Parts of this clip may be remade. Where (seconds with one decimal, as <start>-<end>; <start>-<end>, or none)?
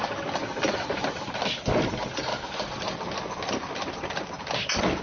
none